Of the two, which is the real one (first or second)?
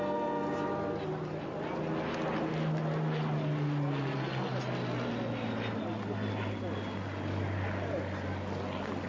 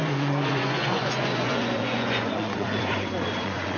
first